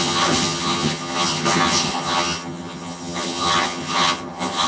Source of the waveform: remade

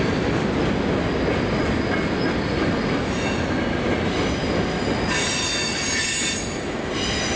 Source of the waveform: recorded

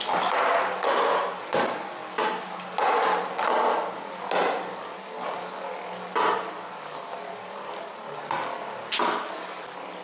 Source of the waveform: recorded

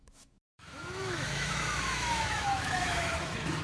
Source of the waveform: remade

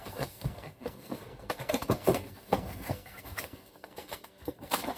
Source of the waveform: remade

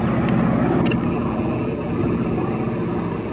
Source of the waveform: recorded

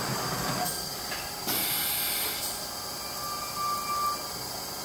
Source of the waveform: recorded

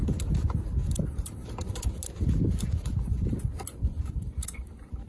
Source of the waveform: recorded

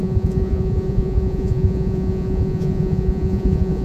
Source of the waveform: remade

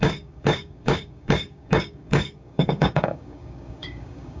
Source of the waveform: remade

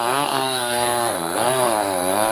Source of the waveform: remade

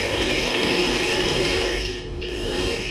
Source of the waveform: remade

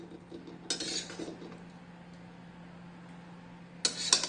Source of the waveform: recorded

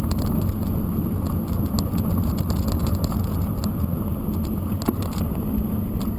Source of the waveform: recorded